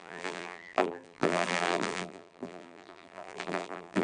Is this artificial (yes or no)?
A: yes